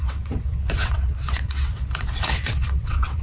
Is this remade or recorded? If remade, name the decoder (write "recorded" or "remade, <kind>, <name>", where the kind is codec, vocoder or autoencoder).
remade, vocoder, WaveNeXt